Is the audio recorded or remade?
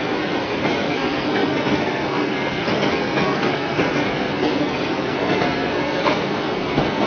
remade